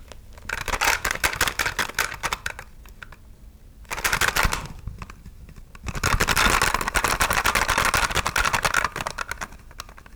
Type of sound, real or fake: real